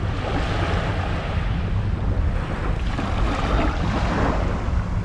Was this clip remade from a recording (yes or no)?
no